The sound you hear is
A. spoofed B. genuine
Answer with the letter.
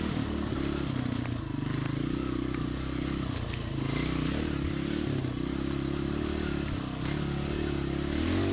B